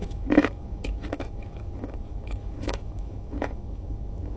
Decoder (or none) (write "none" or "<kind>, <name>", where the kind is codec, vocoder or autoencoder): autoencoder, DAC-VAE